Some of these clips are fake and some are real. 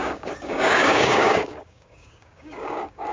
fake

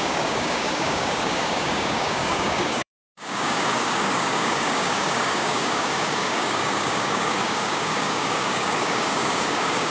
fake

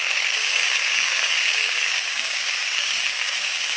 fake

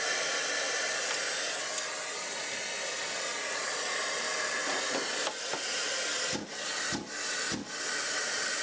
real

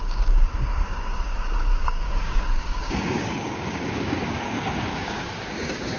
fake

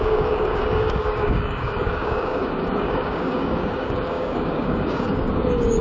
fake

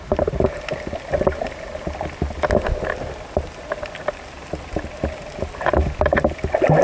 real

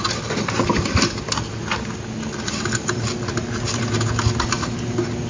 real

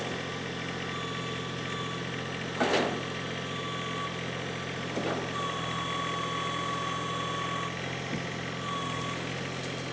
real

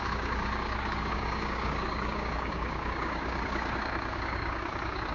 fake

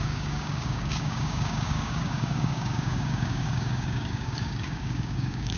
fake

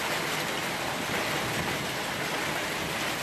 real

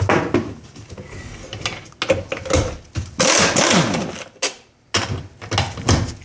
real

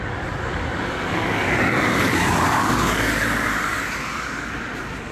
fake